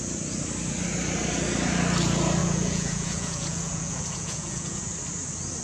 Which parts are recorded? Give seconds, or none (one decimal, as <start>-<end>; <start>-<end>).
0.0-2.4; 4.8-5.6